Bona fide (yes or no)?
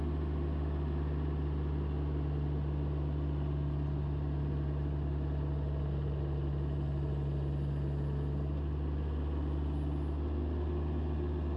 yes